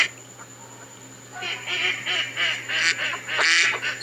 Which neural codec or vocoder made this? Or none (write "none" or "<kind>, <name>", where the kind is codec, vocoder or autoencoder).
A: none